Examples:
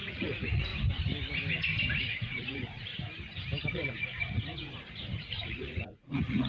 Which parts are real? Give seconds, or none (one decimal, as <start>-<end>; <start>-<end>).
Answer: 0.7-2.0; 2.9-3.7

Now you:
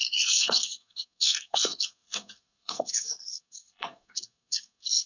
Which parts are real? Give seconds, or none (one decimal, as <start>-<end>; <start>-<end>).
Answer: none

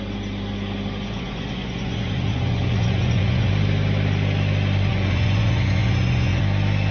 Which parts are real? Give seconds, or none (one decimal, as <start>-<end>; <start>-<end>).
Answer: 0.0-1.0; 3.5-4.9; 6.4-6.9